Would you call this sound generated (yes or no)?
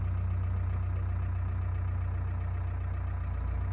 no